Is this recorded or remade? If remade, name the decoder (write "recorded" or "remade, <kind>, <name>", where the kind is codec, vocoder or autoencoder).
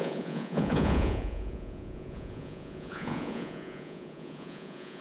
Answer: remade, vocoder, Vocos